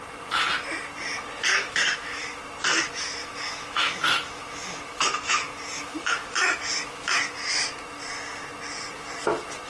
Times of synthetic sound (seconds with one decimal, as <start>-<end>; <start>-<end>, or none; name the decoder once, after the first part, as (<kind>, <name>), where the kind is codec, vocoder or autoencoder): 1.5-2.4 (autoencoder, DAC-VAE); 3.2-7.5